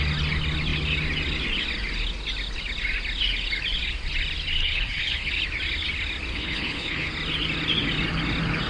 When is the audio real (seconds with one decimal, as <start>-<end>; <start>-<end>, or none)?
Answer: 0.0-4.6; 5.3-6.3; 7.1-8.7